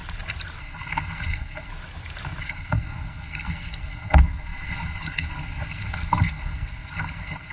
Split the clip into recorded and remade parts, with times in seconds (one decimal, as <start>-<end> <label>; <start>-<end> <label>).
0.0-0.6 recorded; 0.6-1.7 remade; 1.7-2.4 recorded; 2.4-7.5 remade